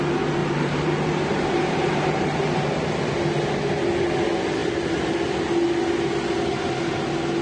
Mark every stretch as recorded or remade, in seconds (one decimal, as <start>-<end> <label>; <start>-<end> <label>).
0.0-0.4 recorded; 0.4-3.1 remade; 3.1-7.4 recorded